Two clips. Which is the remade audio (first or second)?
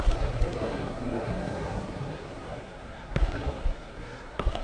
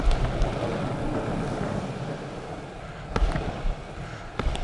first